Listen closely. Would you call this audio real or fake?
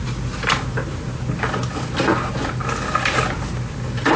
real